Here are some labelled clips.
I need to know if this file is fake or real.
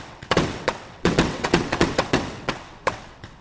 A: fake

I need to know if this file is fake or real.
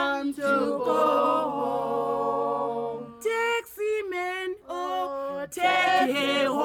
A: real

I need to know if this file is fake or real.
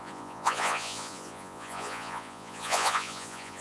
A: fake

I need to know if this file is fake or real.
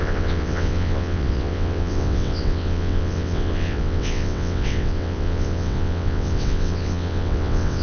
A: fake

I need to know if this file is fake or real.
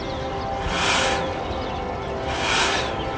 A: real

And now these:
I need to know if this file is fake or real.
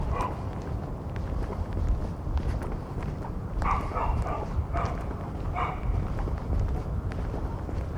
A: fake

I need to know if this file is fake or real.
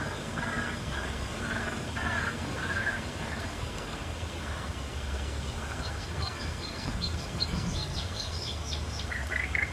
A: fake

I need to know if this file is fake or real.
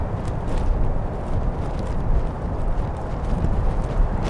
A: fake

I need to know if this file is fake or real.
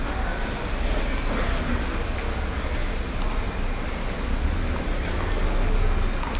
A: real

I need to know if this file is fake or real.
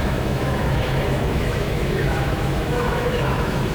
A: fake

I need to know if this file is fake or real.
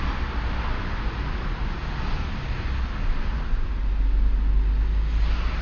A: real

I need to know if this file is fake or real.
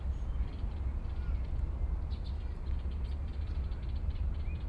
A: real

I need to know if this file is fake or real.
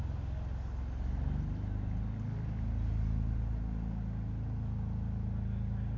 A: real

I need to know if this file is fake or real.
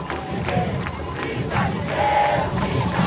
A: fake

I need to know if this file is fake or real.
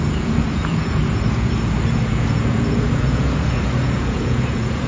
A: fake